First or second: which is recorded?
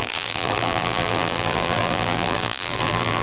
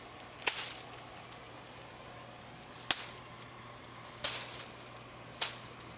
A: second